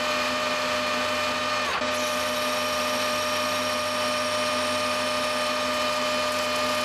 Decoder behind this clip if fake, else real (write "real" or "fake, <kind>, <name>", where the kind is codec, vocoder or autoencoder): real